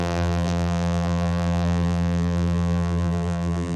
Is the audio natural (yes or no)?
no